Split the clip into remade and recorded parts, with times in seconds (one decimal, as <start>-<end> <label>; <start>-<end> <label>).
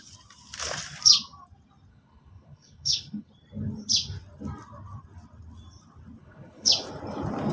0.0-1.9 recorded; 1.9-3.3 remade; 3.3-6.2 recorded; 6.2-6.7 remade; 6.7-7.5 recorded